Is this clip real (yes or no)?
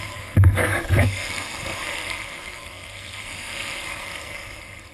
no